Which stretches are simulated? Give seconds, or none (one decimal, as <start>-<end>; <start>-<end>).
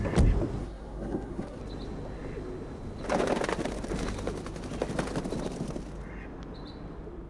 0.6-1.6